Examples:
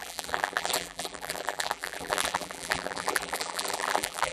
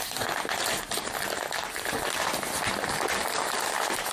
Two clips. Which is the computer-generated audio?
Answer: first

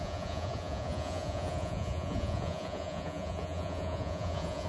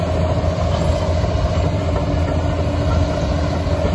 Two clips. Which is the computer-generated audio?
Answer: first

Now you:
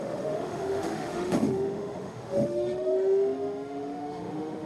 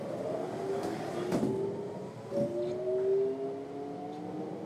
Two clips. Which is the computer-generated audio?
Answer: first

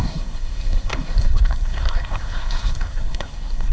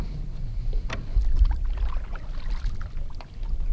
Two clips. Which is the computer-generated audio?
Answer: first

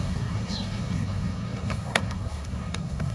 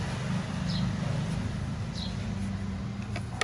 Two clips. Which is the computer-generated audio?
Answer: first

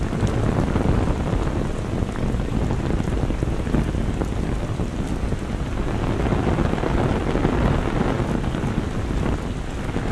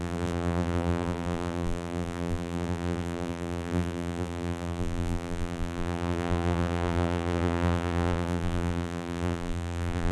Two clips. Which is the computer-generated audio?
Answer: second